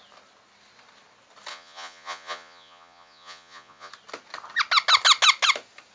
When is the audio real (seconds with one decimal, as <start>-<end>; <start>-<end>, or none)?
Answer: 0.0-1.5; 3.9-5.9